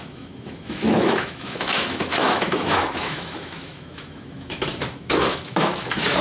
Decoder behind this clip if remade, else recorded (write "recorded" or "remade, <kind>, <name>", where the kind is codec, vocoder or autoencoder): remade, autoencoder, DAC-VAE